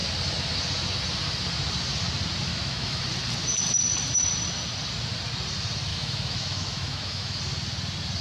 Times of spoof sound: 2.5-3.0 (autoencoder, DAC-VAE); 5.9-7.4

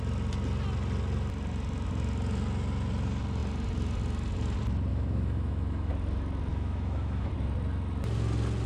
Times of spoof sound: 4.9-5.9 (autoencoder, DAC-VAE); 6.5-7.3

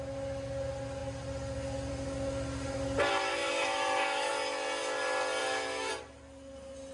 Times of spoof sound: 3.4-4.3 (autoencoder, DAC-VAE); 5.4-5.9

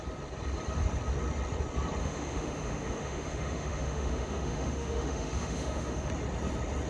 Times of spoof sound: 2.0-6.1 (autoencoder, DAC-VAE)

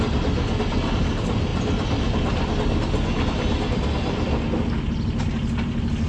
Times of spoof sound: none

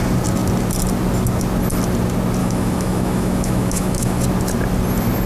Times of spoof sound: 2.4-4.2 (autoencoder, DAC-VAE)

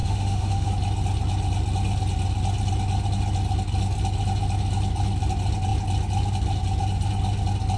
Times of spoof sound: 0.0-0.7 (autoencoder, DAC-VAE)